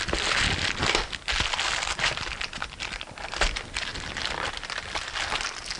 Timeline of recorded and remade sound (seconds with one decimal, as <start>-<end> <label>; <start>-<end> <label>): 0.0-3.9 recorded; 3.9-4.4 remade; 4.4-5.8 recorded